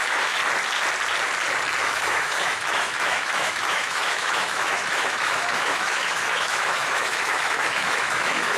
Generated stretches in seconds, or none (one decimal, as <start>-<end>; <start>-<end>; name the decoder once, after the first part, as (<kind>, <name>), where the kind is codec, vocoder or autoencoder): 0.0-0.4 (autoencoder, DAC-VAE); 1.8-8.6